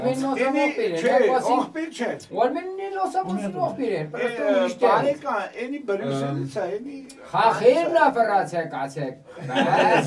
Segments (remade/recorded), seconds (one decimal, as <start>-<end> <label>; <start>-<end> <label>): 0.0-10.1 recorded